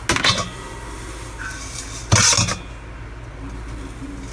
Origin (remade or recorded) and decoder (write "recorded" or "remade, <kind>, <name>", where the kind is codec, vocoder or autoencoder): recorded